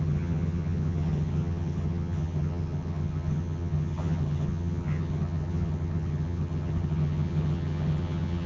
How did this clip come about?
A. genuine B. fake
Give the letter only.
B